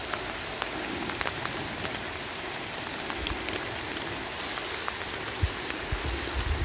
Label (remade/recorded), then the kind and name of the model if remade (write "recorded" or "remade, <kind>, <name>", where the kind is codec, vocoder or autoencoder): recorded